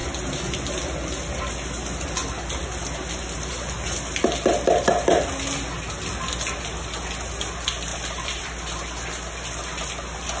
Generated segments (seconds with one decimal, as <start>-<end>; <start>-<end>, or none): 7.9-8.6